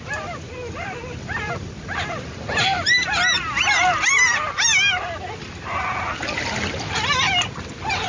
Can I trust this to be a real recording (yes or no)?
yes